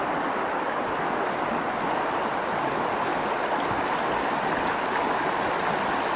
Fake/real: real